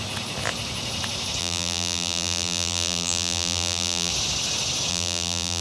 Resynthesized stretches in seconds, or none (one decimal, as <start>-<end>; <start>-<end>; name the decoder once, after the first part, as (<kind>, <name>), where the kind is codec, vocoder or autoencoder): 1.4-4.1 (vocoder, BigVGAN v2); 4.9-5.6